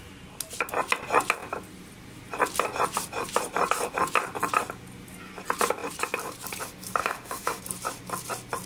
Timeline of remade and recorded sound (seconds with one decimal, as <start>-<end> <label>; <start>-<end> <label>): 0.0-7.0 recorded; 7.0-7.6 remade; 7.6-8.7 recorded